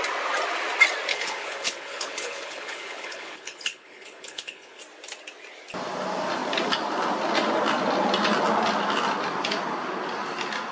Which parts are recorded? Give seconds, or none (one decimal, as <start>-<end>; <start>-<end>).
0.0-1.1; 4.8-10.7